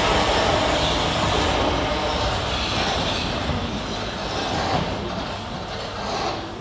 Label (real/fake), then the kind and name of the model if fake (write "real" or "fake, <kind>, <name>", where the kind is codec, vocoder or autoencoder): real